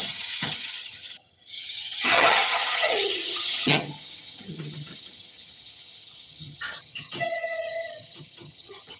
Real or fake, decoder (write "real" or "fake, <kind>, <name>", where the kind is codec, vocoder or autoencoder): fake, vocoder, HiFi-GAN